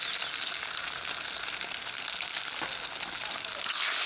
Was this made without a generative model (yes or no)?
yes